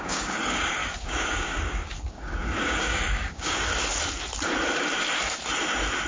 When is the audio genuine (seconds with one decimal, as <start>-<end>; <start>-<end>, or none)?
3.9-6.1